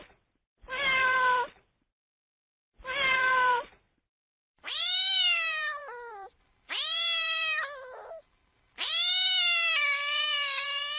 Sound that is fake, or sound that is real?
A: fake